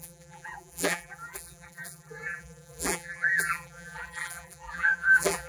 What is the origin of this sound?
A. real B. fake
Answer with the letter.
B